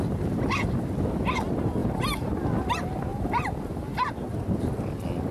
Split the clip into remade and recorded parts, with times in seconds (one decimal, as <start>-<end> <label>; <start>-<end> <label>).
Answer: 0.0-1.8 recorded; 1.8-2.4 remade; 2.4-3.1 recorded; 3.1-4.1 remade; 4.1-5.3 recorded